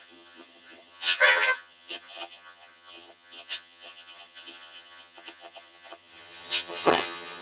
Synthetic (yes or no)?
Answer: yes